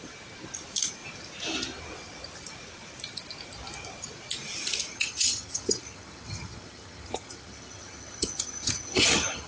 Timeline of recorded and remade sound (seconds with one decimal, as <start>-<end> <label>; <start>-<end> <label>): 0.0-4.9 recorded; 4.9-9.5 remade